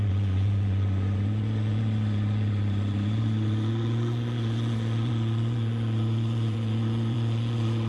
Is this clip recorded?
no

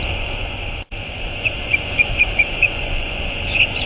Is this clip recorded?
no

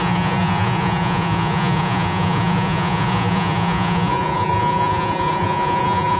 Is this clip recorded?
no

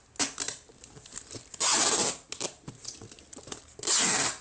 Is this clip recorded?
yes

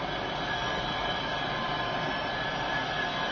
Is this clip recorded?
yes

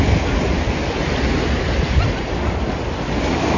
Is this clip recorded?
yes